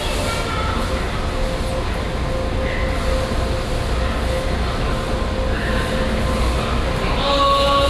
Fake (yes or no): no